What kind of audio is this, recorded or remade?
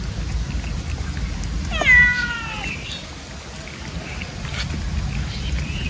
recorded